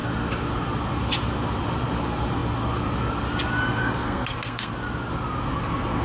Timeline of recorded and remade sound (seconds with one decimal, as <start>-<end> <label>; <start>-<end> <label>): 0.0-3.8 recorded; 3.8-4.7 remade; 4.7-6.0 recorded